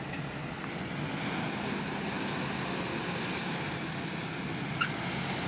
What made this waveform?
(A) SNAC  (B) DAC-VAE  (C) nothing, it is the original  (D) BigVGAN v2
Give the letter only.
C